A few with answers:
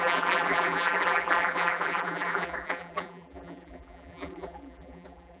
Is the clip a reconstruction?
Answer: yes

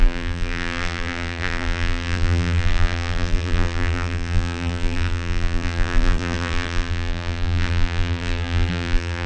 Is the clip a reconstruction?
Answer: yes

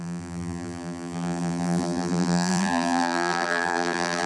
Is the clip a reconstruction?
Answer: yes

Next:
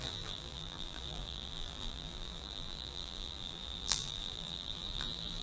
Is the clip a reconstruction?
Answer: yes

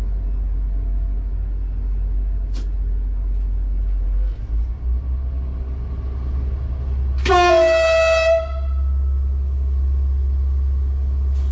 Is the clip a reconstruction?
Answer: no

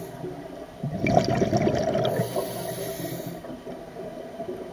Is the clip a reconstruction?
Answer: no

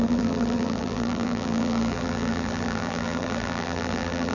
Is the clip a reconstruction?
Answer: yes